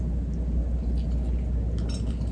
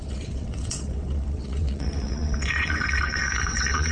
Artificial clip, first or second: second